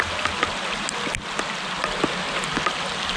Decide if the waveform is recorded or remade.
recorded